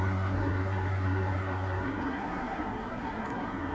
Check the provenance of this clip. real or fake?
fake